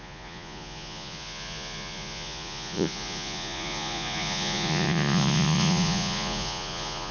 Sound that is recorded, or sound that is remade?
remade